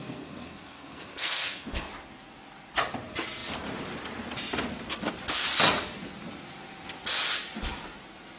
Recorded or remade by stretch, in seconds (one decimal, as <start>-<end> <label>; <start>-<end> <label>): 0.0-1.9 remade; 1.9-8.4 recorded